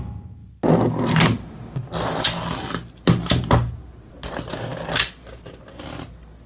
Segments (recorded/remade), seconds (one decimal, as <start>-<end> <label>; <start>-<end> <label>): 0.0-6.5 recorded